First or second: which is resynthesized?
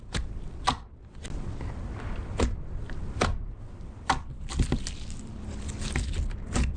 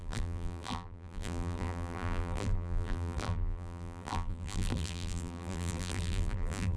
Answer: second